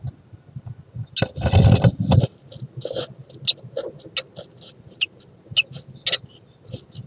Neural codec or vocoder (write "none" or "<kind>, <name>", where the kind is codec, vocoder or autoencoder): none